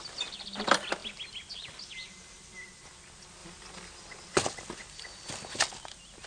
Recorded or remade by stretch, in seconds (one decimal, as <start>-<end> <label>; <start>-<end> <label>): 0.0-6.3 recorded